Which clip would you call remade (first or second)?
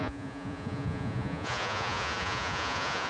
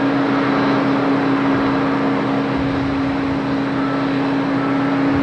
first